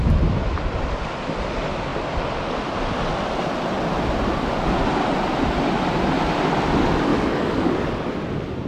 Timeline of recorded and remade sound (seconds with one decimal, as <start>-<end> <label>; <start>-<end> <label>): 0.0-7.1 recorded; 7.1-8.1 remade; 8.1-8.7 recorded